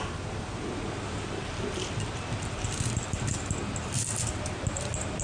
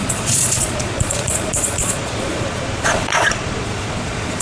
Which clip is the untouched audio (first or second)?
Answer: first